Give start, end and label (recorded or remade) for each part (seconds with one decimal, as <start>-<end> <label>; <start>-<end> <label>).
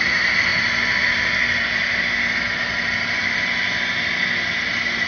0.0-0.5 recorded; 0.5-1.3 remade; 1.3-5.1 recorded